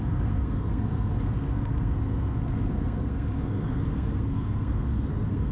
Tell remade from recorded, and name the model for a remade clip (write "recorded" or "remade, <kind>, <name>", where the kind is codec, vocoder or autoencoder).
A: remade, codec, SNAC